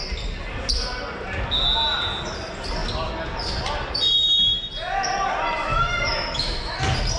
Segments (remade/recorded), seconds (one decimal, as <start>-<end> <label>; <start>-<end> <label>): 0.0-5.7 recorded; 5.7-6.8 remade; 6.8-7.2 recorded